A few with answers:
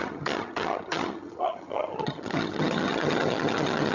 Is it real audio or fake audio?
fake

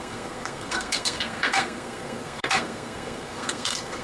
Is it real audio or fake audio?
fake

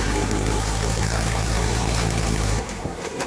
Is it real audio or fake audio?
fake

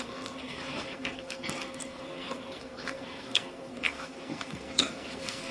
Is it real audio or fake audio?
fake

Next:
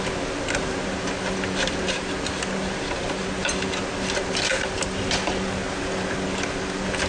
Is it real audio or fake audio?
real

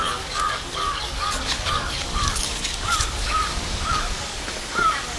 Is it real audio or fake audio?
fake